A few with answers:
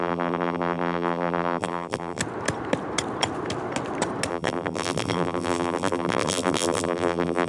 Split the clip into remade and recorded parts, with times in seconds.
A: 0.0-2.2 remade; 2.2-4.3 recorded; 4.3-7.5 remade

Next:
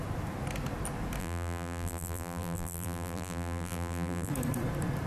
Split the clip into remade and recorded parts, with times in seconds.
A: 0.0-1.2 recorded; 1.2-4.3 remade; 4.3-5.1 recorded

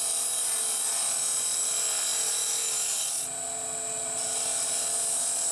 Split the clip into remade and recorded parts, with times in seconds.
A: 0.0-5.5 recorded